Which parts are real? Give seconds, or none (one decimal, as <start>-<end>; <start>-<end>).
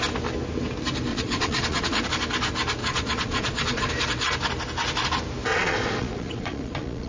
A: 0.0-1.1; 2.1-2.8; 3.9-5.5